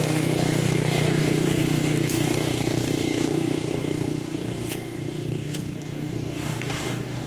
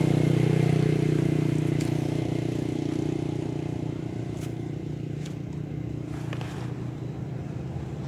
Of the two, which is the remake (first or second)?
first